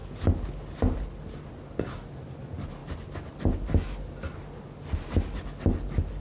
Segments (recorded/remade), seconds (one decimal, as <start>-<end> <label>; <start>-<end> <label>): 0.0-6.2 recorded